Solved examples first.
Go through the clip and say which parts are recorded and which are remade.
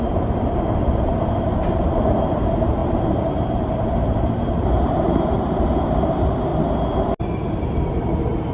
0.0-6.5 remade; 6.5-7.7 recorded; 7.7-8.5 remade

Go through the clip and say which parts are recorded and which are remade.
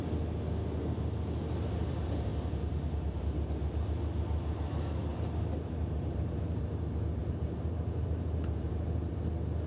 0.0-2.3 recorded; 2.3-3.2 remade; 3.2-5.1 recorded; 5.1-6.6 remade; 6.6-7.2 recorded; 7.2-9.1 remade; 9.1-9.7 recorded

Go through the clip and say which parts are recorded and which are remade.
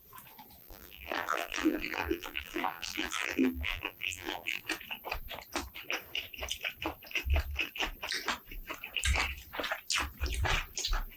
0.0-0.6 recorded; 0.6-4.6 remade; 4.6-11.2 recorded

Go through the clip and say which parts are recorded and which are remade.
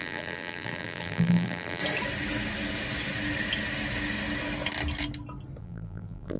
0.0-1.8 remade; 1.8-5.6 recorded; 5.6-6.4 remade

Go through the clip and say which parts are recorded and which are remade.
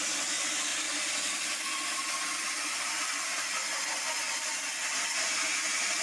0.0-0.7 recorded; 0.7-3.8 remade; 3.8-6.0 recorded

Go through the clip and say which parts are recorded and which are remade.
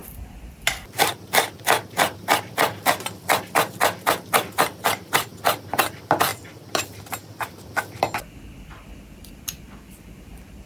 0.0-5.3 remade; 5.3-5.8 recorded; 5.8-10.7 remade